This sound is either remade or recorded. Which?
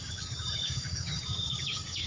remade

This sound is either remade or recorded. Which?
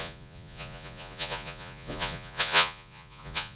remade